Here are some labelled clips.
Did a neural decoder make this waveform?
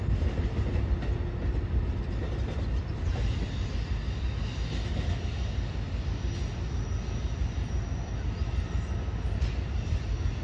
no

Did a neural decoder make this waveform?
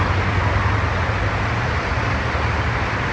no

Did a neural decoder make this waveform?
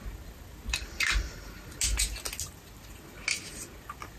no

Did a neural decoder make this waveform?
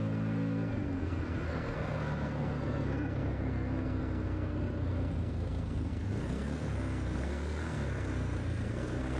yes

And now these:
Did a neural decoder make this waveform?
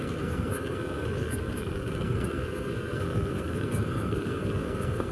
yes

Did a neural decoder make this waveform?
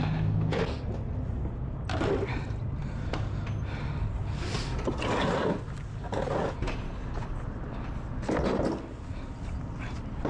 no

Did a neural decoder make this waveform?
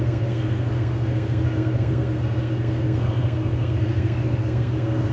yes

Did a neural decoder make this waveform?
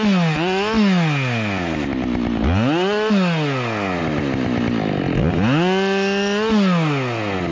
no